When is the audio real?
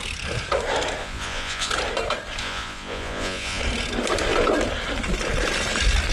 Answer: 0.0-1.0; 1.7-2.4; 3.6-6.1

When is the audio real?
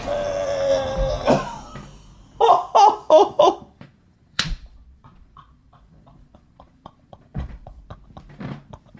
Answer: 0.0-3.0; 7.8-9.0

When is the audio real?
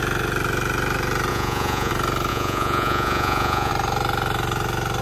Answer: 0.0-1.3; 1.9-2.3; 3.7-5.0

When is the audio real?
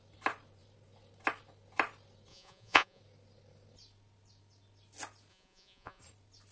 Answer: 0.0-2.3; 3.0-5.3; 6.0-6.5